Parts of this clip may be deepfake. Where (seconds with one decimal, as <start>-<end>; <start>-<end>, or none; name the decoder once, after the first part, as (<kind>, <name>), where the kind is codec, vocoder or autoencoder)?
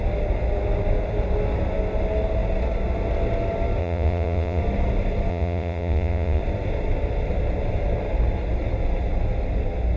3.8-4.6 (vocoder, Vocos); 5.3-6.4